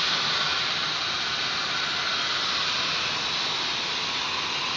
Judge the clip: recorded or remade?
recorded